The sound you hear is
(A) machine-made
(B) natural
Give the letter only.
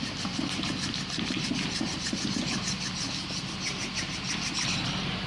B